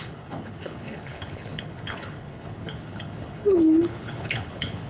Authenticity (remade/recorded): remade